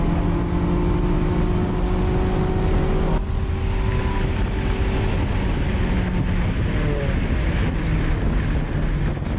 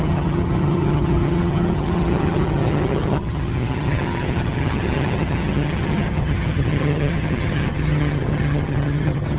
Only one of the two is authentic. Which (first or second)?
first